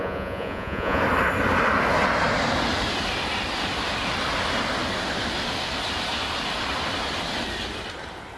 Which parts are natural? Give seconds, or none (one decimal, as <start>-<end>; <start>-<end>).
1.0-8.4